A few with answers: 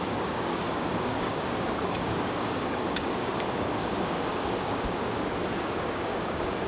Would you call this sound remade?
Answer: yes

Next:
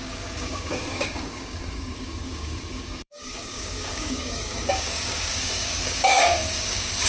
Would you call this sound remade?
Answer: yes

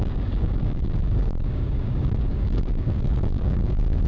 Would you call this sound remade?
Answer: yes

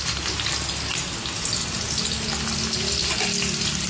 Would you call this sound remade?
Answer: no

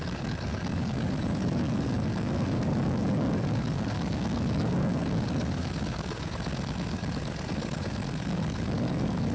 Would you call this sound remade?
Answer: yes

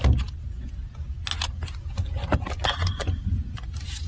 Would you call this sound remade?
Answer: no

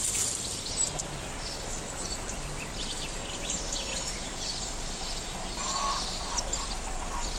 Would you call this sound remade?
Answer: no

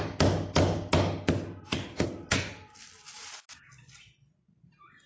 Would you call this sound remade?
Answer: no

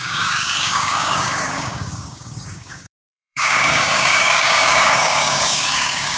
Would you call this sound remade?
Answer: yes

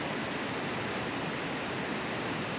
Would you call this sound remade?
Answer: no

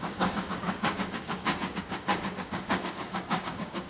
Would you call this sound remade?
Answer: yes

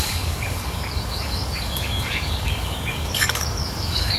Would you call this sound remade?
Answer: yes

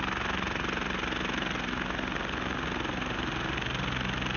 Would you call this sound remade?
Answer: no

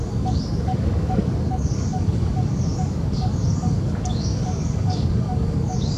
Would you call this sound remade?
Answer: yes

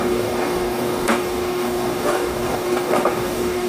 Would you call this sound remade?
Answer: yes